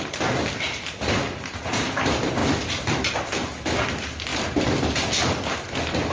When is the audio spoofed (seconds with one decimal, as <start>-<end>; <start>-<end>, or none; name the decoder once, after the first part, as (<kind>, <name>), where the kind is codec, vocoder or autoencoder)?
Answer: none